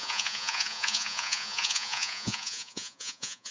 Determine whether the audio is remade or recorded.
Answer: remade